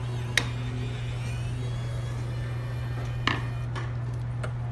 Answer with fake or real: real